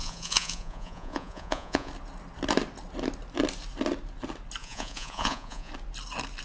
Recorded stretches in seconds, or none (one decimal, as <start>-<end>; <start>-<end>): 1.9-4.6; 5.7-6.4